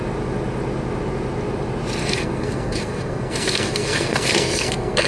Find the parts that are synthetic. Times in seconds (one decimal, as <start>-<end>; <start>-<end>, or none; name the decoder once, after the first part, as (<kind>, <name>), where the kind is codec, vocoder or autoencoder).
2.0-5.1 (codec, SNAC)